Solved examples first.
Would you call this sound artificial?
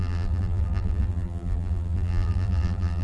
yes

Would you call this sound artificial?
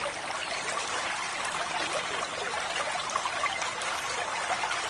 no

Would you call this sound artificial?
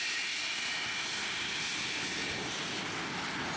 no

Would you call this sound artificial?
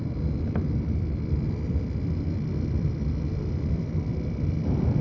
yes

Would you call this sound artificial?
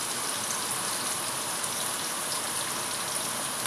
no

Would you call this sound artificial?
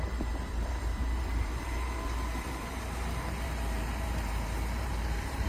yes